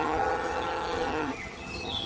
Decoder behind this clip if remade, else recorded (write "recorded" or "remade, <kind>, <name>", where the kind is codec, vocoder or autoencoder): remade, vocoder, HiFi-GAN